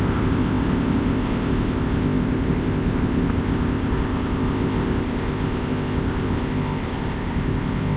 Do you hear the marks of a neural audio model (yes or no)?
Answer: yes